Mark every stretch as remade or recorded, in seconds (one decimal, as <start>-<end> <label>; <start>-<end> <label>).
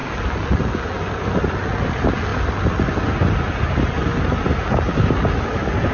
0.0-5.9 recorded